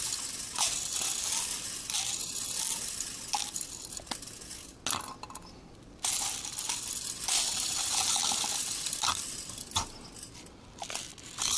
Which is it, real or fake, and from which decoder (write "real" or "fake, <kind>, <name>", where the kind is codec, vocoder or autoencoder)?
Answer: real